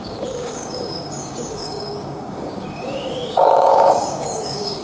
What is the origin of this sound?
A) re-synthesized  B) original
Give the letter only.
A